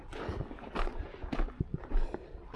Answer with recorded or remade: remade